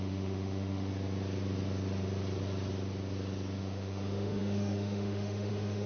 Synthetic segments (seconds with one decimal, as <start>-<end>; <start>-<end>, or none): 0.0-0.9; 3.6-5.9